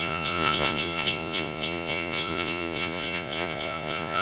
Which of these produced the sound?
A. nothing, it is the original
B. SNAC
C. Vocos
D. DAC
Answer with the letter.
C